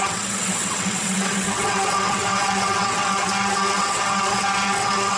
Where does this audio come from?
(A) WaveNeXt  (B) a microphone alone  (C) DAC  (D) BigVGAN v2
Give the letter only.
A